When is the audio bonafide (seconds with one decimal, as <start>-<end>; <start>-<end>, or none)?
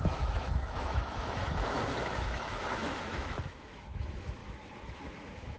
none